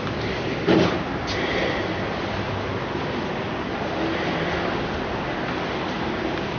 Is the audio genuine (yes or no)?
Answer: yes